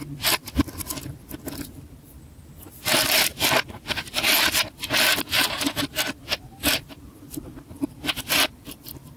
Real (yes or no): no